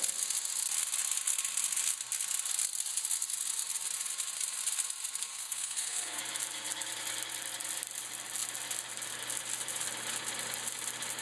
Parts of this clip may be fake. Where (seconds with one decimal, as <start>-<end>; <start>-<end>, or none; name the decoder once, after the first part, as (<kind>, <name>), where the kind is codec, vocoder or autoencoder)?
5.3-6.2 (codec, SNAC)

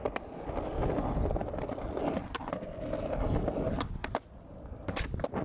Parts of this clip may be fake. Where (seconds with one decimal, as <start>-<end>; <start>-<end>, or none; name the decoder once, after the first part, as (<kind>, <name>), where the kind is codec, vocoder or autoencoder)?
none

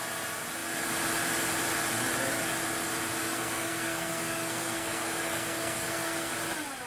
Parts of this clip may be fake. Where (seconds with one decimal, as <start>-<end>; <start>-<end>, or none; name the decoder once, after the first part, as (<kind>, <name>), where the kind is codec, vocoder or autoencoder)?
3.2-6.3 (codec, SNAC)

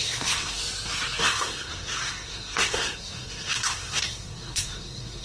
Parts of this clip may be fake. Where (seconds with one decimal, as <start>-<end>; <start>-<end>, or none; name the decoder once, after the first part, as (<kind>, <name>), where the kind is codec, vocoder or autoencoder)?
0.0-0.6 (codec, SNAC); 1.2-5.2

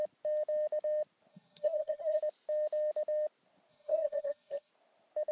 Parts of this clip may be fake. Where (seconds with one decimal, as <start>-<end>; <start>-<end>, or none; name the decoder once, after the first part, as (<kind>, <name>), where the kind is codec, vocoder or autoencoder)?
1.3-2.2 (codec, SNAC); 3.7-4.7